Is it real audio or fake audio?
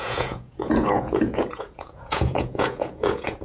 fake